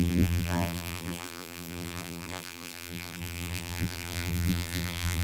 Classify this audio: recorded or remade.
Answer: remade